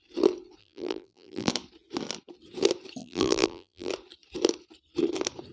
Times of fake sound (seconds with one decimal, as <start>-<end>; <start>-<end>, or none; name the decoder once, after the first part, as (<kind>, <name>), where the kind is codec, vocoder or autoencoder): 0.6-1.5 (vocoder, BigVGAN v2); 3.0-3.9